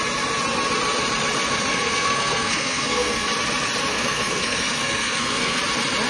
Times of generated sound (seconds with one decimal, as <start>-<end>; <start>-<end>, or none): 1.7-3.3; 3.9-5.6